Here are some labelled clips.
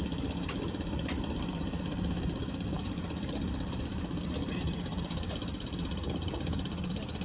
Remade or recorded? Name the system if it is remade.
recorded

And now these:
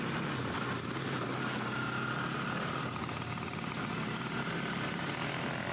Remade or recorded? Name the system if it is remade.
recorded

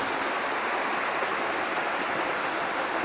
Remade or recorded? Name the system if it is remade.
recorded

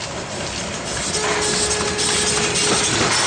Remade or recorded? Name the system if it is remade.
recorded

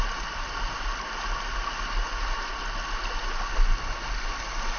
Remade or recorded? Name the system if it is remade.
recorded